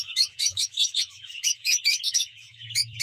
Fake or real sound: fake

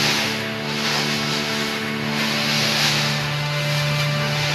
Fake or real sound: fake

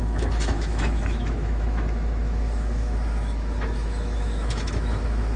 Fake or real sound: fake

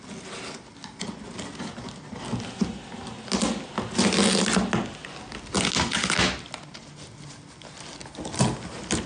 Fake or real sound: real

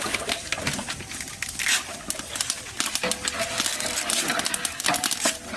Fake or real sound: real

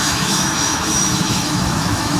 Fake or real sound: fake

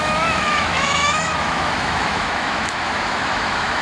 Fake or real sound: fake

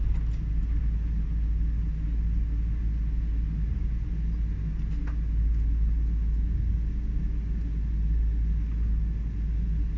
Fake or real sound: real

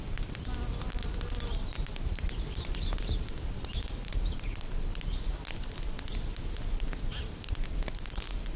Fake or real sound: real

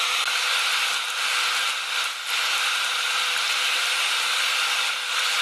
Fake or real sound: real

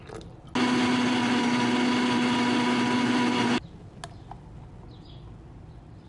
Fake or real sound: real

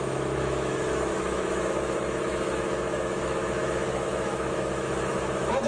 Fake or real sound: fake